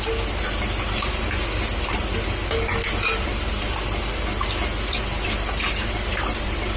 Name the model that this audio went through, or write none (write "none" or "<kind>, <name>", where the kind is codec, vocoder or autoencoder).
none